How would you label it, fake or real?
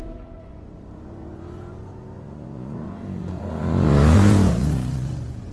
fake